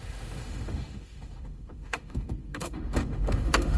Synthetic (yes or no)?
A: yes